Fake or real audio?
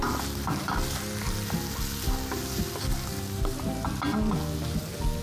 real